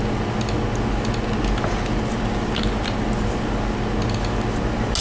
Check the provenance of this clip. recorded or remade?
recorded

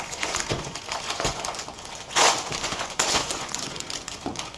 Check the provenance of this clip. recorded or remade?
remade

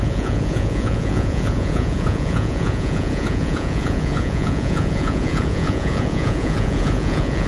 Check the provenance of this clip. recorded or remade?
remade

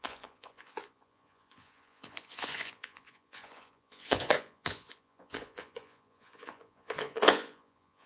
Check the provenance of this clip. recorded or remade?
remade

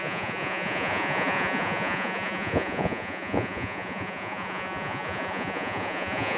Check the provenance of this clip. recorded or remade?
remade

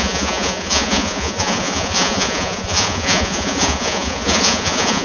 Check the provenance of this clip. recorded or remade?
remade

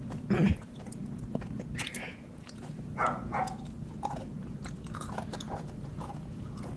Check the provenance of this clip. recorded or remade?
remade